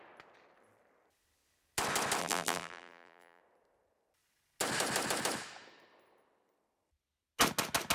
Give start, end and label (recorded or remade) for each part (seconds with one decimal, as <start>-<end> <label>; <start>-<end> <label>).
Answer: 0.0-2.2 recorded; 2.2-3.4 remade; 3.4-7.9 recorded